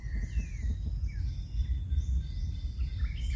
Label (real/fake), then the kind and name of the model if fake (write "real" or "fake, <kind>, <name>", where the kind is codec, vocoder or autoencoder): real